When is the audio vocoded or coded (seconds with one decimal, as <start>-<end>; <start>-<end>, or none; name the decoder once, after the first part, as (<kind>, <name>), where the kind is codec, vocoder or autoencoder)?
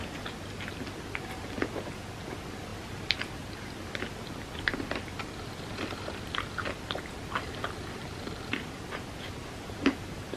none